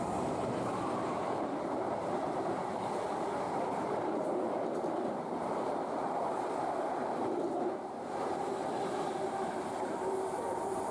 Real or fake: fake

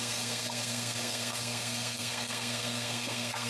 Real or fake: fake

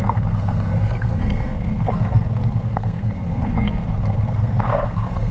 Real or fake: fake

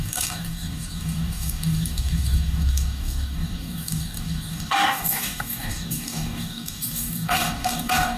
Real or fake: fake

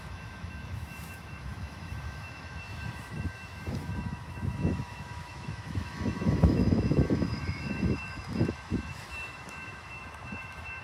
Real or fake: fake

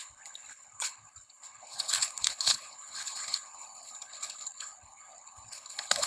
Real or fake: fake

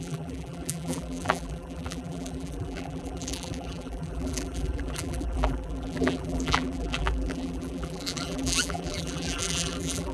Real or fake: fake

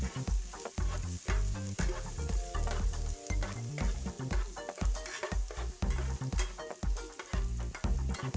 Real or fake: real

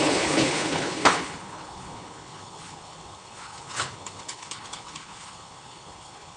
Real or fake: fake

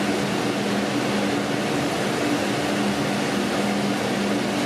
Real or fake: real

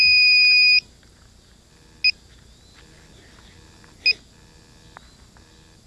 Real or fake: real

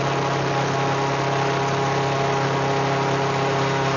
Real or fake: real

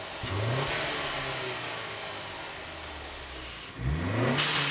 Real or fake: real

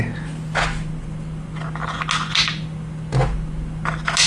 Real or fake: real